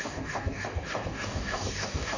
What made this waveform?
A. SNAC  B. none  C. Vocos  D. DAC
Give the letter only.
D